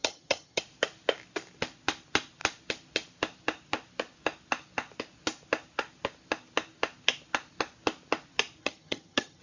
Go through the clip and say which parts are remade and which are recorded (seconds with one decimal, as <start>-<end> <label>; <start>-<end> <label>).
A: 0.0-0.6 remade; 0.6-8.6 recorded; 8.6-9.4 remade